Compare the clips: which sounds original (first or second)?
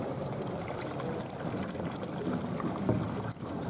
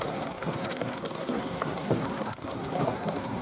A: first